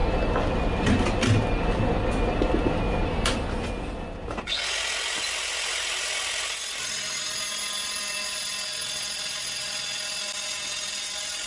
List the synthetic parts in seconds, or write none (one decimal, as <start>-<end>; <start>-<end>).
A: none